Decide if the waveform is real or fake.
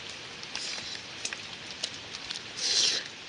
real